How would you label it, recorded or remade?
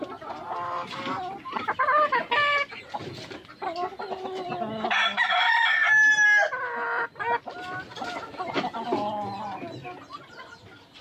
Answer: recorded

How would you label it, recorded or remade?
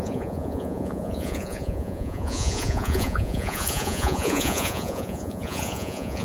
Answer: remade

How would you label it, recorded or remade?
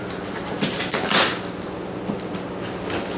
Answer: recorded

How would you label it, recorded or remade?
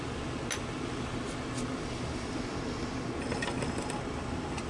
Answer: recorded